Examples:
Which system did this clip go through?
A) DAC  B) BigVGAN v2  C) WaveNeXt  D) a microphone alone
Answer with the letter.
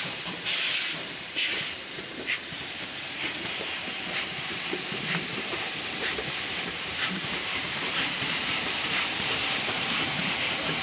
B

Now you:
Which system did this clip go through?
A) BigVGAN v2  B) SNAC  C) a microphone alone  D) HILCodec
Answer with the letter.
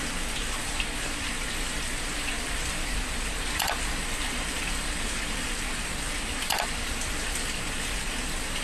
A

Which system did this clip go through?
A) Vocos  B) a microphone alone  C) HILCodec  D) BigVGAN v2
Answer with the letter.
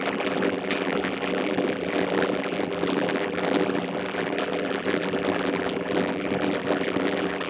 D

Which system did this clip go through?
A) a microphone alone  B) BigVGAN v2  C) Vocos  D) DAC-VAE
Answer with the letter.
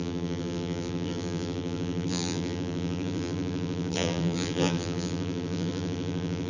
B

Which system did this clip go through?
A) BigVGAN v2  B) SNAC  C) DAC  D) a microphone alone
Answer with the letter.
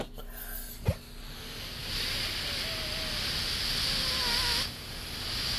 D